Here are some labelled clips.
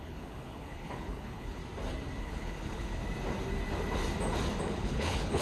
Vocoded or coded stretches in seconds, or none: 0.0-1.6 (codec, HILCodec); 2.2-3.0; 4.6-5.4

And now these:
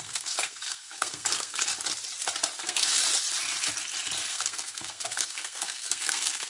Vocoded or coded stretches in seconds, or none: 0.0-1.7 (codec, SNAC); 2.6-3.0; 4.3-6.5

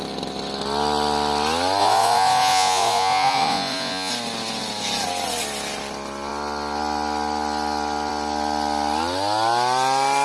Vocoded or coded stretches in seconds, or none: 1.8-4.1 (vocoder, Vocos)

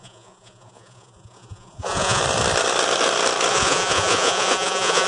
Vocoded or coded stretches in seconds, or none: 0.0-2.2 (vocoder, Vocos); 3.5-5.1